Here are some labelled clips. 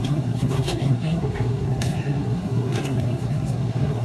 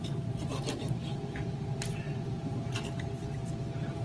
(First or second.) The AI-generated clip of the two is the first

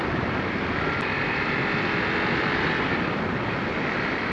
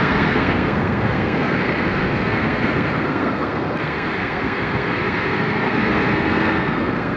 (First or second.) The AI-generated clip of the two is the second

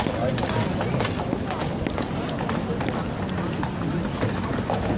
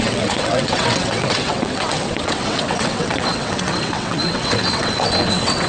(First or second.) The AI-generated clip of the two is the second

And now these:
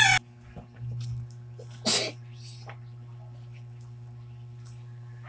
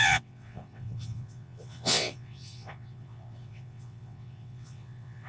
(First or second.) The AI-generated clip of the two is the second